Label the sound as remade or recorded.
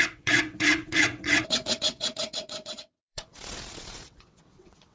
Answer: remade